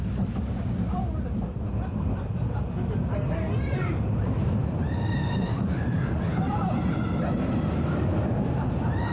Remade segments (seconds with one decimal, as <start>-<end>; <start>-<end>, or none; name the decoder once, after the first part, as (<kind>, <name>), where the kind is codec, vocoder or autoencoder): 4.6-6.2 (vocoder, BigVGAN v2)